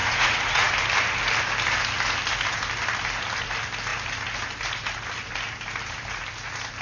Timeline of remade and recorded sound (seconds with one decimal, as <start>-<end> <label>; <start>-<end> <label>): 0.0-0.7 remade; 0.7-6.8 recorded